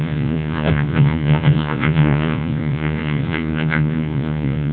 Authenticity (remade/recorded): remade